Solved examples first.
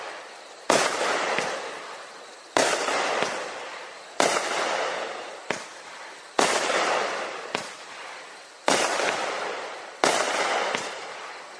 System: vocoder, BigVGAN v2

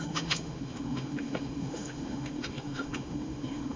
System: autoencoder, DAC-VAE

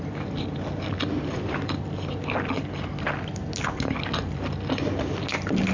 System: none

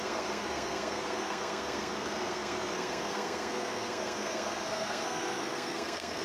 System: codec, SNAC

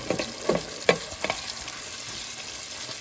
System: none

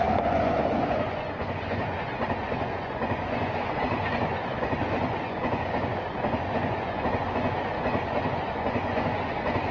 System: vocoder, Vocos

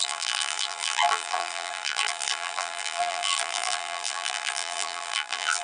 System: vocoder, BigVGAN v2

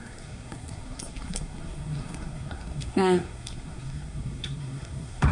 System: codec, SNAC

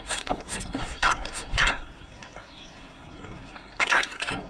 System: codec, SNAC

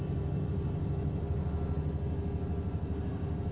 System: none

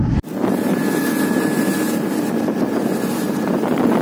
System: vocoder, BigVGAN v2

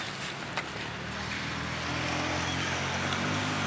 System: none